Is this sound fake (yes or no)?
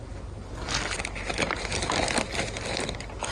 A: no